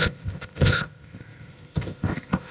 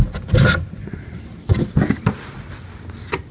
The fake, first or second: first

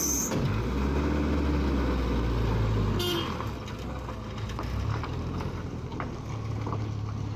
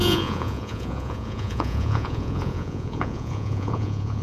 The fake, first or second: second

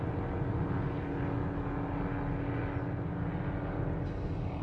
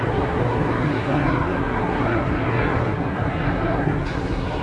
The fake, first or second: second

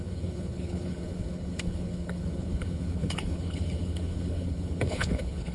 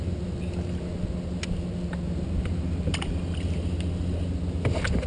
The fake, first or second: first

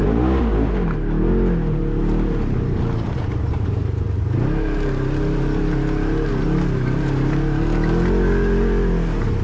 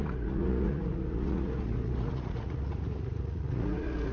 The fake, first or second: second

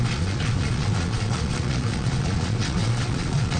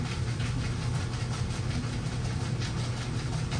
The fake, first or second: first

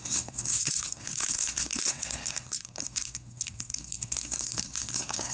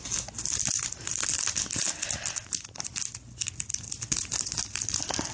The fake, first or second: first